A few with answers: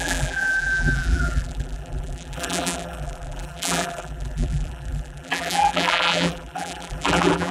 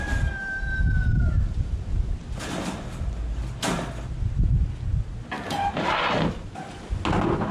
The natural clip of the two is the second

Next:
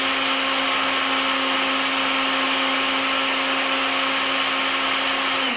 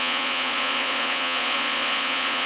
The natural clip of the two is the first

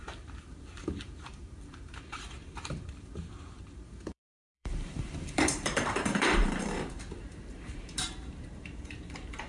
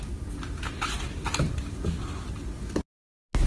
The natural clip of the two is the second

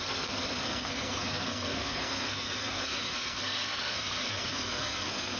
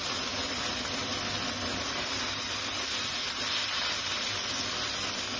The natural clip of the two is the second